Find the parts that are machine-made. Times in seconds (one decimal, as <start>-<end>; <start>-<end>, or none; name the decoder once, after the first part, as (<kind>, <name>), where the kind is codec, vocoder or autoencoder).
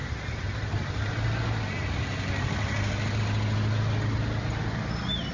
none